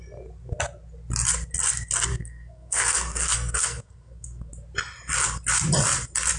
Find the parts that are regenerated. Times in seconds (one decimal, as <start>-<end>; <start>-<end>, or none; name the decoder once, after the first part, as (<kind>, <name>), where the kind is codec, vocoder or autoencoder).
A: 2.1-4.5 (codec, SNAC)